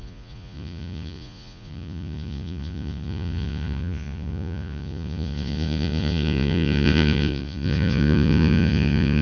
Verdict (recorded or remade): remade